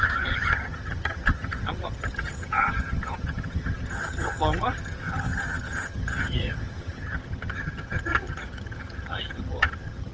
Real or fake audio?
fake